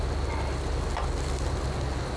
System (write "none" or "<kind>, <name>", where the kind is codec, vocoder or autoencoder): none